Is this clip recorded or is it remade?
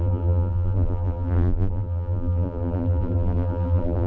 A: remade